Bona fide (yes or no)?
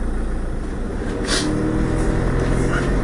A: yes